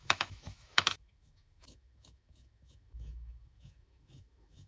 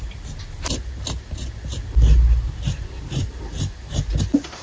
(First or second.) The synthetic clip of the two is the first